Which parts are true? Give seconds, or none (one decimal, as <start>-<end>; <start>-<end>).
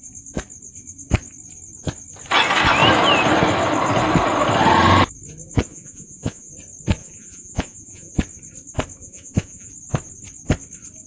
0.0-5.7; 6.5-7.0; 8.1-9.0; 9.7-11.1